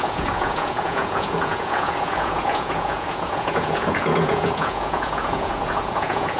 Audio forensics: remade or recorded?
remade